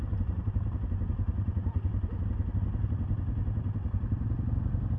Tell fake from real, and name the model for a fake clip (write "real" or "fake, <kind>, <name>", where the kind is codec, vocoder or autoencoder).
real